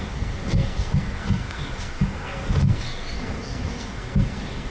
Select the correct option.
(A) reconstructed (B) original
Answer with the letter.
A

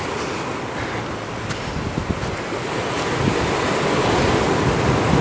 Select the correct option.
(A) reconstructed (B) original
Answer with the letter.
B